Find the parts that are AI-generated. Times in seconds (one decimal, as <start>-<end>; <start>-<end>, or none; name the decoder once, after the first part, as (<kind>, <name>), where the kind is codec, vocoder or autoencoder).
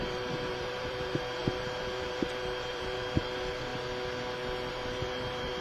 0.0-3.7 (vocoder, BigVGAN v2); 4.7-5.6